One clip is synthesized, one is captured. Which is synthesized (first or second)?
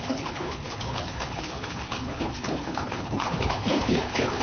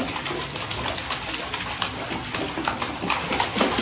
first